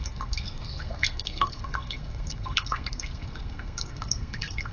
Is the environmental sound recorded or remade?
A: remade